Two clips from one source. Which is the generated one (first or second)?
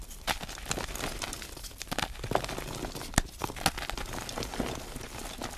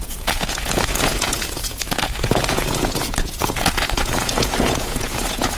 second